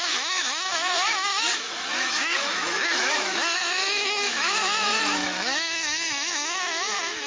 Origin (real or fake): fake